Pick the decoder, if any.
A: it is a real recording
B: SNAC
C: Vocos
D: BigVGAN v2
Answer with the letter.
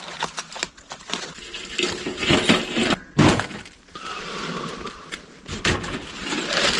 A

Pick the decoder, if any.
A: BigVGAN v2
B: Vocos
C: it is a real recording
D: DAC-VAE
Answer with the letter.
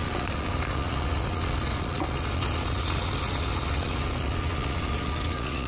B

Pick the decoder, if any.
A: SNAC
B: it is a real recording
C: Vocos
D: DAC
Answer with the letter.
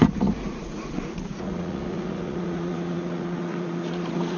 C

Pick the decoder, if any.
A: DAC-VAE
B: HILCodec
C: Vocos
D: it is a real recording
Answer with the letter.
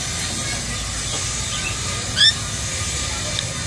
D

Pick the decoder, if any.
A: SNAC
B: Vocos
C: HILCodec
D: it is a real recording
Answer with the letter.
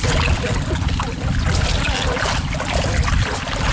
D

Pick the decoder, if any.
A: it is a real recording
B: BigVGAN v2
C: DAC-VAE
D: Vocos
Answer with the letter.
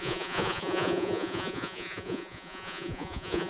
D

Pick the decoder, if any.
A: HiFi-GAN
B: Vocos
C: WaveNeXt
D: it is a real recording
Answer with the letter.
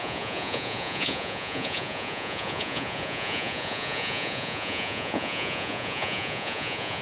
B